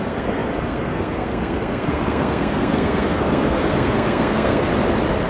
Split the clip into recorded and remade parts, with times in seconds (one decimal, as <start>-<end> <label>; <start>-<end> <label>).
0.0-4.7 remade; 4.7-5.3 recorded